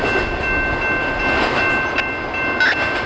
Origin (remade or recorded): recorded